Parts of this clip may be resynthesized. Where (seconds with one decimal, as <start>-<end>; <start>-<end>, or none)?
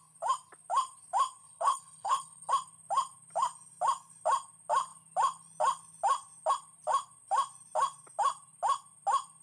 1.4-2.5